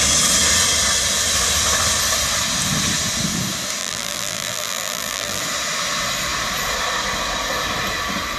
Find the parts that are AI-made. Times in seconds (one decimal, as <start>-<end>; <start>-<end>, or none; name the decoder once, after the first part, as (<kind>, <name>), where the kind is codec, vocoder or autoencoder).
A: 3.8-5.4 (vocoder, BigVGAN v2)